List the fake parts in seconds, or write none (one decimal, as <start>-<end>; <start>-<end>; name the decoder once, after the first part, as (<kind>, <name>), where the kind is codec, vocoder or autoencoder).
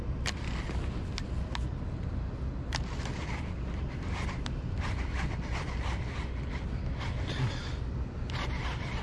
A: none